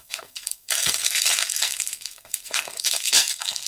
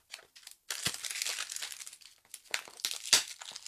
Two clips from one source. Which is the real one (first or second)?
second